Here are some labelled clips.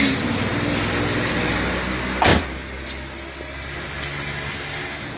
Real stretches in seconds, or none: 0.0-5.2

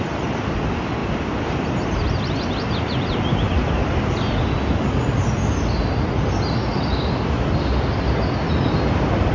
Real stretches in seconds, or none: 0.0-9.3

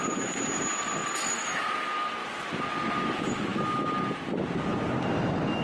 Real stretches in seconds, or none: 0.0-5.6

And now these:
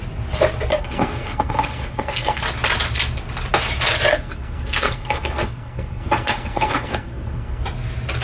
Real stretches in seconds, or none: 0.0-0.7; 2.4-4.1; 7.6-8.2

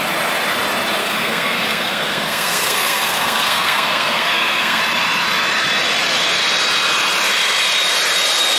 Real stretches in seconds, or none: 0.0-1.0; 4.8-8.6

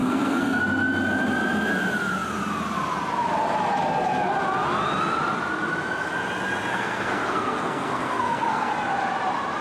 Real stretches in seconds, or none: 0.6-6.7; 8.7-9.6